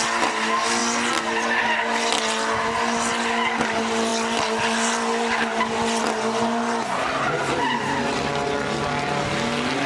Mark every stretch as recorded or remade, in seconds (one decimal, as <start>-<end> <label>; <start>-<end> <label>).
0.0-9.9 recorded